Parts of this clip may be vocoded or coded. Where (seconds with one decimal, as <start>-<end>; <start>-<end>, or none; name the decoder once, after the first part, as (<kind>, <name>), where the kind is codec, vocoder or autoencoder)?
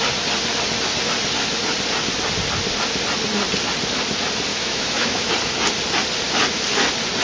4.5-5.3 (autoencoder, DAC-VAE)